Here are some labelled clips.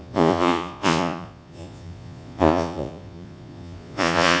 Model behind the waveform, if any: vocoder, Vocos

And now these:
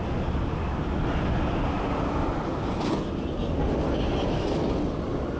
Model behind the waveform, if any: none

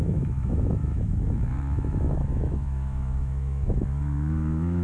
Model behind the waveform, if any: autoencoder, DAC-VAE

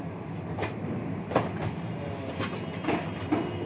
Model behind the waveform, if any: none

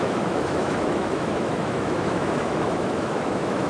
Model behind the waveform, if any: autoencoder, DAC-VAE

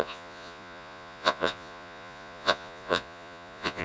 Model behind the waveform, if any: vocoder, Vocos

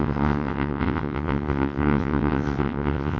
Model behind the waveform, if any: vocoder, WaveNeXt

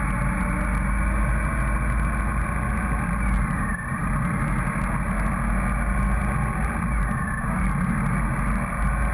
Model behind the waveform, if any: none